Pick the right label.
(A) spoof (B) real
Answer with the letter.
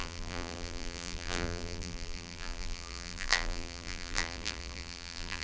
A